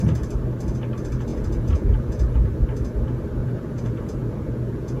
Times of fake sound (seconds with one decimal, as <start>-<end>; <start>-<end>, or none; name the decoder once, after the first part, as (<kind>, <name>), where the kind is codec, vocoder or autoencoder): 1.3-2.5 (vocoder, Vocos); 3.4-5.0